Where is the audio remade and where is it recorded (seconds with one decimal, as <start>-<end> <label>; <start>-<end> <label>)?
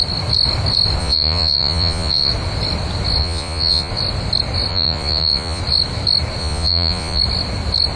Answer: 0.0-1.0 recorded; 1.0-2.3 remade; 2.3-3.2 recorded; 3.2-3.9 remade; 3.9-4.7 recorded; 4.7-5.6 remade; 5.6-6.4 recorded; 6.4-7.2 remade; 7.2-8.0 recorded